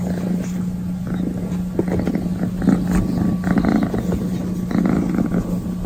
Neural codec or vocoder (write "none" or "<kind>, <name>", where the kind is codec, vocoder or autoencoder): none